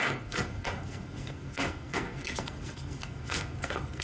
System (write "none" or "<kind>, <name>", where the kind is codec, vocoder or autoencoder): codec, SNAC